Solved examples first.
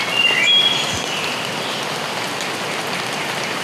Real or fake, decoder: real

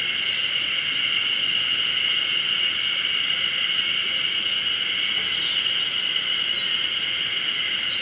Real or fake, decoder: real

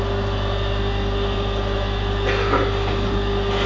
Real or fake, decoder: real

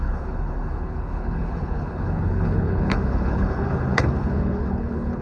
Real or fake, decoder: fake, codec, HILCodec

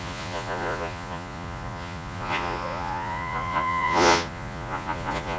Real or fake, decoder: fake, vocoder, Vocos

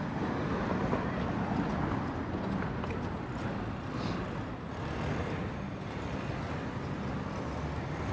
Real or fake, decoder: real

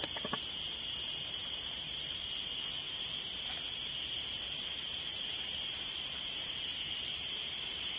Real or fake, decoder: fake, vocoder, BigVGAN v2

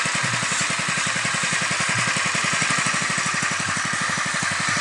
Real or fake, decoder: real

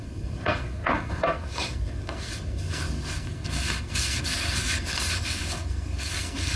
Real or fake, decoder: fake, codec, SNAC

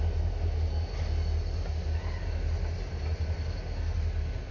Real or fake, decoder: real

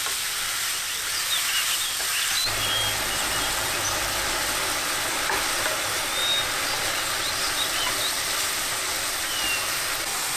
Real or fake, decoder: real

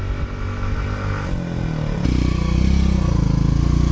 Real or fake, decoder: real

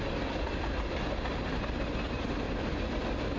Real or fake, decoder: real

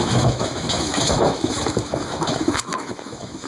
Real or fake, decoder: fake, autoencoder, DAC-VAE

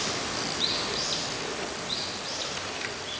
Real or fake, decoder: real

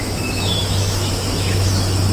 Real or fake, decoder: fake, autoencoder, DAC-VAE